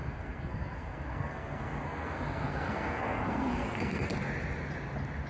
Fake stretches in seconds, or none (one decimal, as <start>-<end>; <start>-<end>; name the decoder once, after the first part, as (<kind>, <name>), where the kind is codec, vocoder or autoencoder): 0.0-4.1 (codec, SNAC)